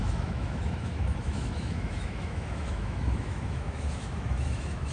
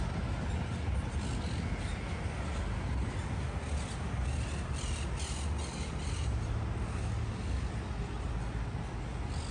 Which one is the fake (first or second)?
first